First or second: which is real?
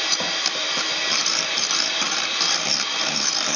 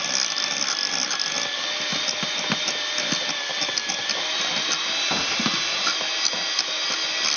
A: second